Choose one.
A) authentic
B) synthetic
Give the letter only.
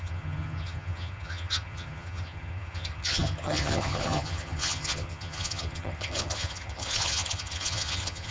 B